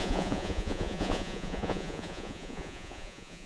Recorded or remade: remade